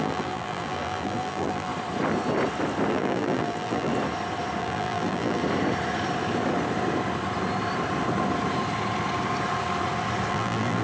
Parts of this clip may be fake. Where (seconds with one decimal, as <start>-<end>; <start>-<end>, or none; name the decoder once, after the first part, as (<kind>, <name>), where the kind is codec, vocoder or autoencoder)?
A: 0.0-1.7 (vocoder, BigVGAN v2); 2.9-3.9; 4.6-5.4; 10.3-10.8